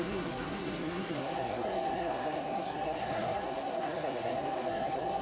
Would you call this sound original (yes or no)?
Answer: no